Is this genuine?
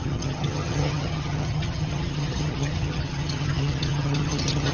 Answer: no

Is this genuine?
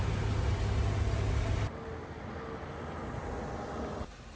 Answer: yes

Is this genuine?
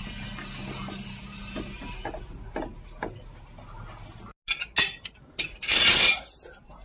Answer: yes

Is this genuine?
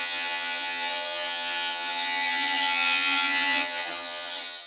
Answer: no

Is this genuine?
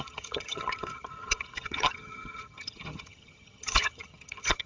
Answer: no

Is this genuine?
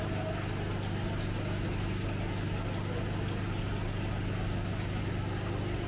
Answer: yes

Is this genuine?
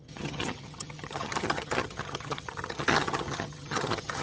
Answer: no